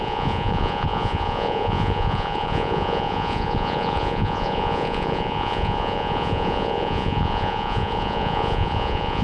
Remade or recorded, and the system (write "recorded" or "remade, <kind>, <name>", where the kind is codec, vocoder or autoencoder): remade, vocoder, Vocos